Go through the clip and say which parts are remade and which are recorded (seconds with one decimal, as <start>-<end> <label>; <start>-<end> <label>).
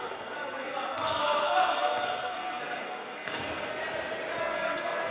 0.0-3.8 remade; 3.8-4.4 recorded; 4.4-5.1 remade